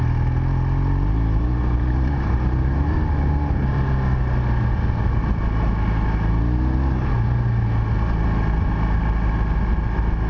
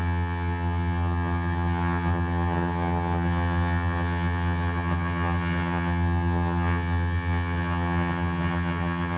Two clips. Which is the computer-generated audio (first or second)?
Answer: second